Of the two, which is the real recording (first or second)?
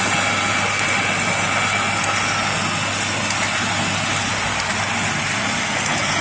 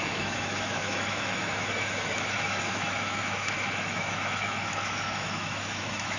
first